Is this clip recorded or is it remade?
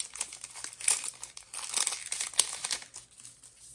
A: recorded